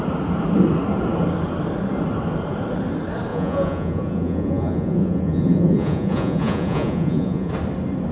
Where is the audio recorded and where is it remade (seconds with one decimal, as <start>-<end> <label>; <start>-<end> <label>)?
0.0-3.3 recorded; 3.3-7.5 remade; 7.5-8.1 recorded